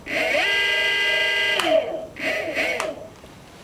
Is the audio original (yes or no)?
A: yes